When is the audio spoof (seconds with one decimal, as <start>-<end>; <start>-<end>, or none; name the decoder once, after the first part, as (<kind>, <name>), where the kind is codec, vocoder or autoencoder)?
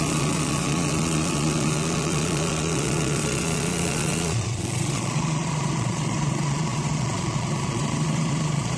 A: 0.0-8.8 (vocoder, Vocos)